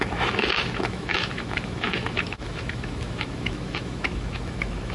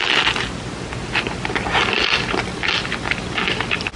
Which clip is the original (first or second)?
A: second